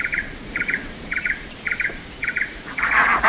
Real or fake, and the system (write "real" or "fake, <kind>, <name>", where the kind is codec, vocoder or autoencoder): fake, vocoder, Vocos